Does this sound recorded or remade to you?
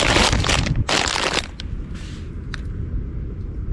recorded